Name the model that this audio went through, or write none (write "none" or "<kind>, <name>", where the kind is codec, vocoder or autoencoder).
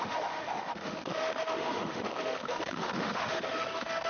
autoencoder, DAC-VAE